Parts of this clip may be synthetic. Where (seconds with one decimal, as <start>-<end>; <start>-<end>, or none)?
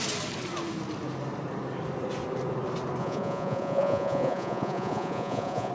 3.0-5.7